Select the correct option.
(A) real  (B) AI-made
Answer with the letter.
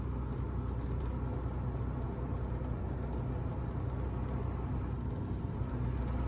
A